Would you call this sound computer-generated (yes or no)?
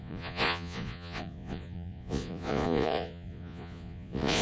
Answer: yes